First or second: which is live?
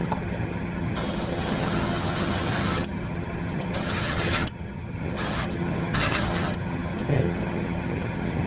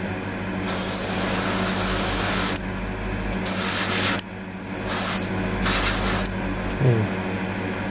second